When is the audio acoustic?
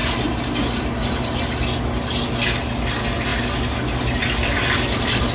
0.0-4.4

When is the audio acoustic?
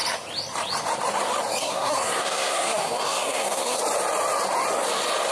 0.0-1.6; 3.8-5.3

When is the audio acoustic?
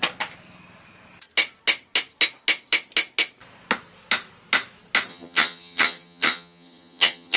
0.0-5.1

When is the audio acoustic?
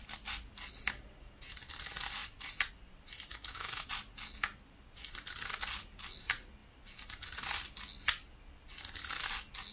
0.0-3.3; 3.9-9.7